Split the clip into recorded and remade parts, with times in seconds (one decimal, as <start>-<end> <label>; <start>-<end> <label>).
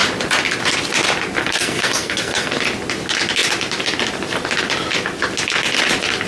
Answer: 0.0-1.4 recorded; 1.4-2.5 remade; 2.5-6.3 recorded